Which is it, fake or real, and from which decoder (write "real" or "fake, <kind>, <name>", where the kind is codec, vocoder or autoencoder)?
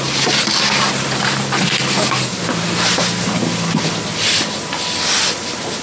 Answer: real